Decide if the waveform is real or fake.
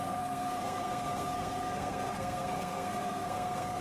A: fake